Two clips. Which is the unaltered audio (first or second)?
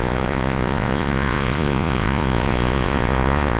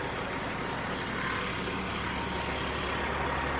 second